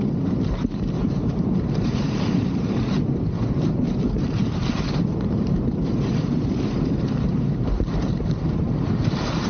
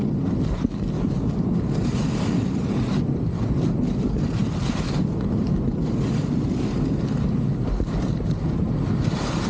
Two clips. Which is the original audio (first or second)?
second